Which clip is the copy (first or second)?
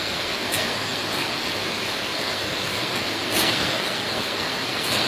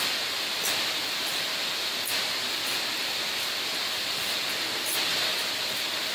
first